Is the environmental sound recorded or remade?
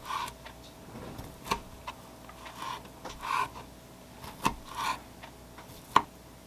recorded